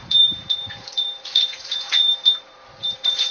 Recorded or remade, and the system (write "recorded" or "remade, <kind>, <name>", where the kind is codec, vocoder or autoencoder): remade, vocoder, Vocos